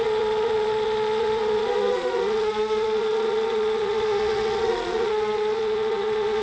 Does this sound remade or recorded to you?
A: remade